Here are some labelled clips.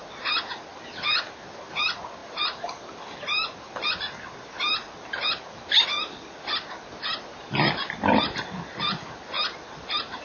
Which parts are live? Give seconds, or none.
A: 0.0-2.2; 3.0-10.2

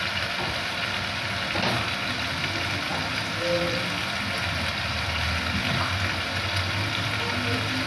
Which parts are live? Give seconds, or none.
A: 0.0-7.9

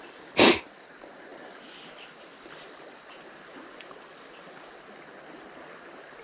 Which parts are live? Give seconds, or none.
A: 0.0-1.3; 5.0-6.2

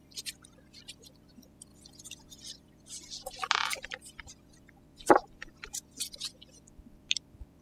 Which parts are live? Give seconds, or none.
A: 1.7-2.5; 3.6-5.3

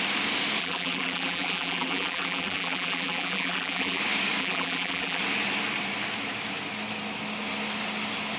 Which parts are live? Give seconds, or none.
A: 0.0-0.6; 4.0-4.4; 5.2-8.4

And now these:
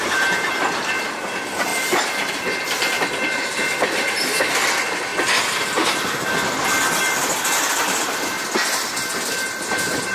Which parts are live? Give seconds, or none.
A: 0.0-1.7; 2.3-10.1

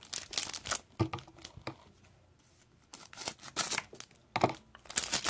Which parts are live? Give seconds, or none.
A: 0.0-5.3